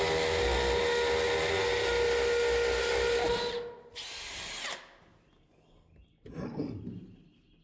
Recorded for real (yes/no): yes